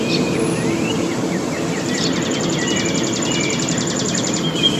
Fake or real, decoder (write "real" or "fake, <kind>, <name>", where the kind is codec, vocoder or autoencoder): fake, vocoder, BigVGAN v2